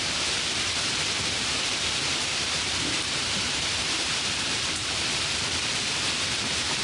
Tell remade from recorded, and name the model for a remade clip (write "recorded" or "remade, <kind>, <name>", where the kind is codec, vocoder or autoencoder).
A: remade, vocoder, BigVGAN v2